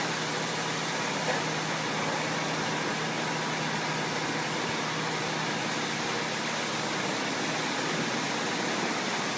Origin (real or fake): real